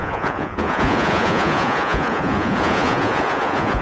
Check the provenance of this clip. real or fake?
fake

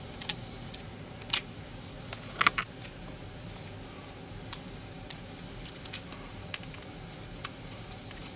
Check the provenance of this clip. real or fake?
real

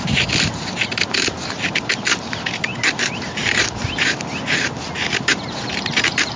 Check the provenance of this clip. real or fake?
fake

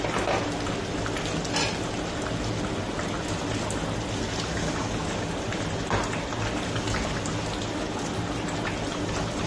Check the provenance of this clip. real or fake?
real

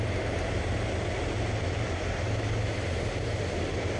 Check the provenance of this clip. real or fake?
real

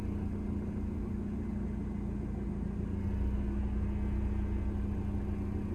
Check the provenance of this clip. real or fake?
real